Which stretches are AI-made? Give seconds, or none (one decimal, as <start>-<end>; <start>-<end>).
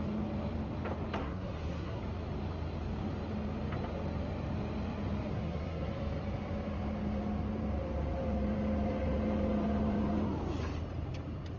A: 1.2-2.0; 5.3-5.9